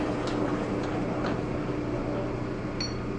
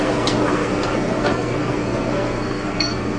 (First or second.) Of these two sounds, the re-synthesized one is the second